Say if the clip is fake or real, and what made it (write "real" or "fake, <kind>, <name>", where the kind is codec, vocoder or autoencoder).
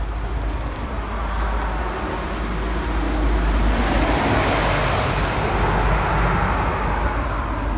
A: real